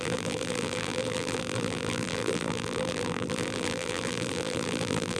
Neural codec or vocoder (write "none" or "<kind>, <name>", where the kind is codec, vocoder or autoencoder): vocoder, BigVGAN v2